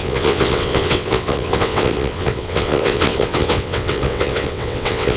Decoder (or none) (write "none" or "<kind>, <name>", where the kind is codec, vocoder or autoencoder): vocoder, WaveNeXt